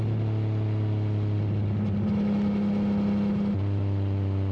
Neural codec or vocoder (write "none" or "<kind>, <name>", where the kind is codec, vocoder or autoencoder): none